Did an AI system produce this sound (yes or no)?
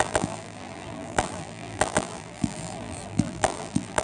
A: yes